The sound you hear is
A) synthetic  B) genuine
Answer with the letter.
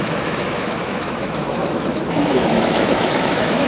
A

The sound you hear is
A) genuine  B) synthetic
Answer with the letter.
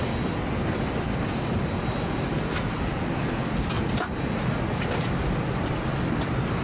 A